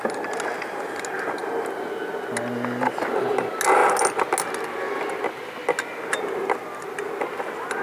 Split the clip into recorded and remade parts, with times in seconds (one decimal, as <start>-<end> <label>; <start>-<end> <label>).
0.0-7.8 recorded